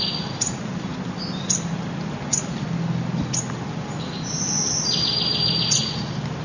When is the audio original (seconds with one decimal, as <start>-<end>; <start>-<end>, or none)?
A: 0.0-6.4